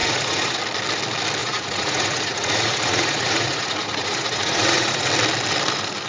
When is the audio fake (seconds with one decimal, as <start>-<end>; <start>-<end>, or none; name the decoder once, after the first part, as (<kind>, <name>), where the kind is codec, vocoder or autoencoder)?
0.0-0.6 (vocoder, Vocos); 1.4-5.1